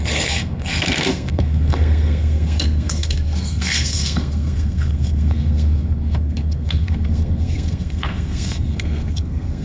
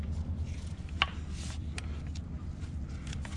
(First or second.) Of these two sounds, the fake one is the first